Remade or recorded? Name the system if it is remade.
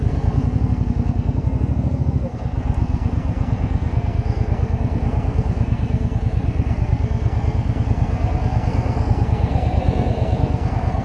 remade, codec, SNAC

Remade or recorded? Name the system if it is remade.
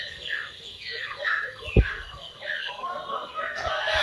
remade, codec, SNAC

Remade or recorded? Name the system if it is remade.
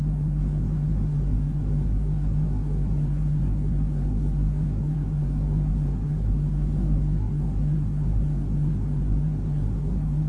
remade, codec, SNAC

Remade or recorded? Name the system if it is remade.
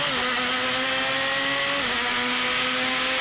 recorded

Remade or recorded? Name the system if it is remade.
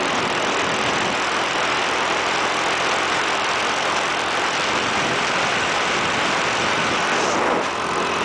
recorded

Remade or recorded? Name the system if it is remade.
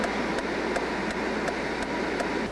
recorded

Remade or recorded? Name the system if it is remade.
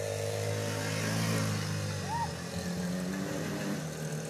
recorded